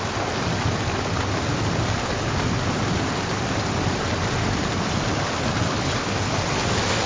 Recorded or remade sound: recorded